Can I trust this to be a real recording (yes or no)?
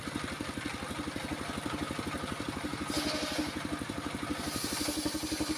yes